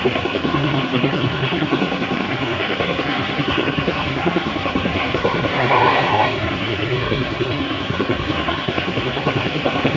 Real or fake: fake